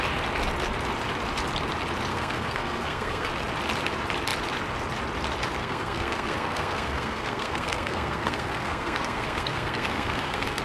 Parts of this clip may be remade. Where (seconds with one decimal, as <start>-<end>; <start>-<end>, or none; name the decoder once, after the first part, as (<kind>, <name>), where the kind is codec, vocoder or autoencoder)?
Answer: 2.1-3.3 (codec, SNAC); 5.6-10.6